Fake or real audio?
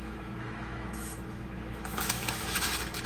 fake